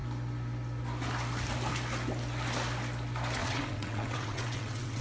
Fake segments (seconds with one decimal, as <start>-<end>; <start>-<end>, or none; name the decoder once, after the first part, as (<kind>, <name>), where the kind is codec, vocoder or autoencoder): 3.4-5.0 (vocoder, WaveNeXt)